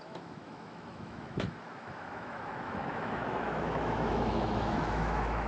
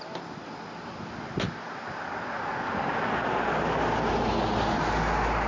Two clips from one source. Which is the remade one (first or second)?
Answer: first